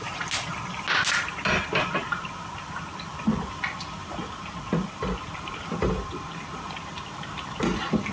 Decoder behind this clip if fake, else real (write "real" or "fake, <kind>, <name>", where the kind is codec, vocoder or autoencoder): real